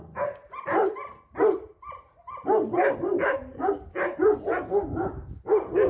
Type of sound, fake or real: real